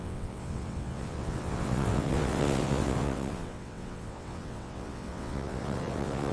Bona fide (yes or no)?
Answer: no